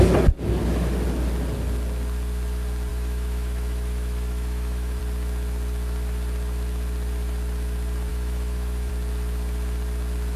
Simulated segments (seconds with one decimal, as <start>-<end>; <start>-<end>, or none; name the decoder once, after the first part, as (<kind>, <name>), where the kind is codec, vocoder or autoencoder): 2.9-5.0 (autoencoder, DAC-VAE); 8.1-8.9